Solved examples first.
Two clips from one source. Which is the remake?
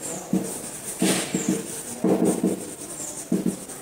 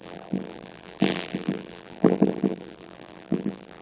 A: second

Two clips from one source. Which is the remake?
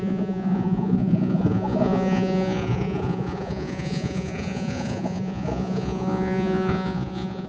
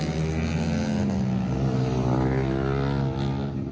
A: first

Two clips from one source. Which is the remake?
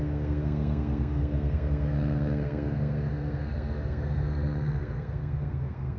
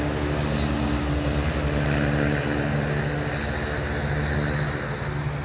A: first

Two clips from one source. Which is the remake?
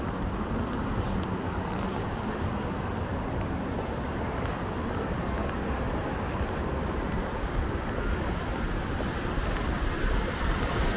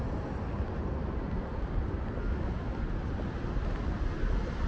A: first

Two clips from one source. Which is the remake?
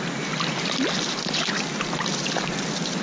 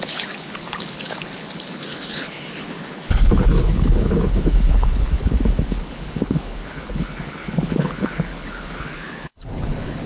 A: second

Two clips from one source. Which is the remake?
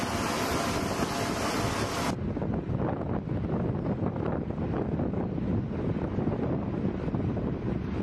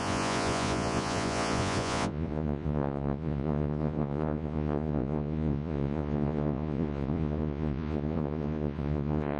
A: second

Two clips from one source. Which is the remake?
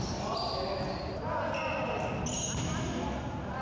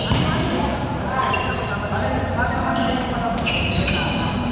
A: second